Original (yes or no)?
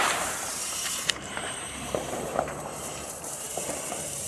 no